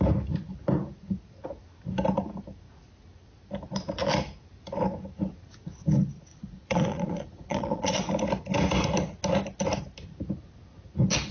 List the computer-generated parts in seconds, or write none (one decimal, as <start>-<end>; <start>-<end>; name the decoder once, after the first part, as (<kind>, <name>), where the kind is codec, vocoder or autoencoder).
6.3-8.0 (vocoder, Vocos)